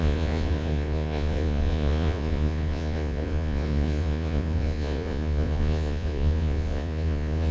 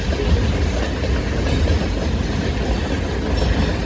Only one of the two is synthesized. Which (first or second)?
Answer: first